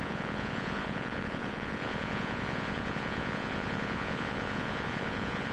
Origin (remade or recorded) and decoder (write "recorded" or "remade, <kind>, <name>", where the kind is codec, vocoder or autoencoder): remade, vocoder, Vocos